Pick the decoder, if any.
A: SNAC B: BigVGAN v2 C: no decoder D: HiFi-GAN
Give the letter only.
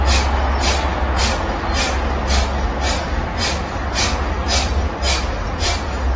C